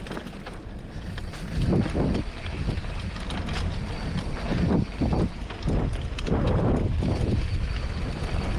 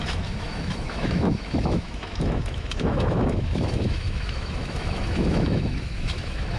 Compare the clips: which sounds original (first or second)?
first